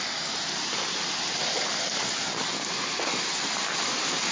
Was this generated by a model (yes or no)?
no